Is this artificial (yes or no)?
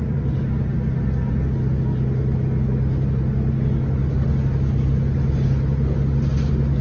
no